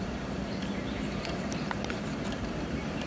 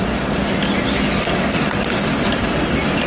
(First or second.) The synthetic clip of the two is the first